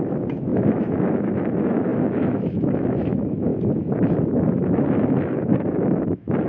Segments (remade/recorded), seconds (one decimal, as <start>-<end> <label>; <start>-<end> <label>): 0.0-3.5 remade; 3.5-4.1 recorded; 4.1-6.5 remade